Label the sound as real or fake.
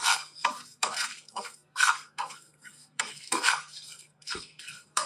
fake